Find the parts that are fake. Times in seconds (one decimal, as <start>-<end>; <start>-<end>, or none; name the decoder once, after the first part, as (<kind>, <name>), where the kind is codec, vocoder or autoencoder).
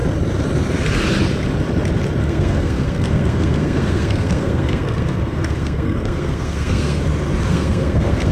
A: 2.2-7.0 (codec, SNAC); 7.5-8.3